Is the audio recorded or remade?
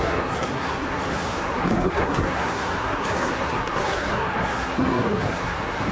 remade